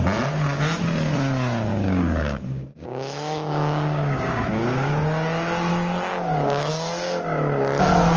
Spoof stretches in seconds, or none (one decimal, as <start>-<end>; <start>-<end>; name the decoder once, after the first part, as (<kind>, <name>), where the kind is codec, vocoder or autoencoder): 1.7-4.9 (codec, DAC); 6.1-6.7